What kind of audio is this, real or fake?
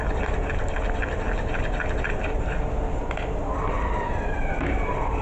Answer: real